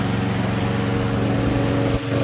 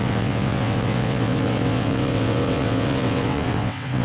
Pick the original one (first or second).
first